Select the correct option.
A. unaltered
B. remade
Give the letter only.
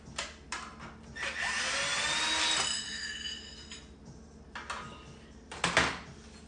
A